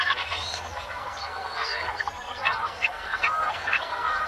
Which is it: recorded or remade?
remade